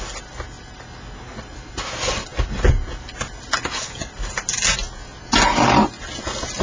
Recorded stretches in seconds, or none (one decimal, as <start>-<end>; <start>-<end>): 0.0-6.6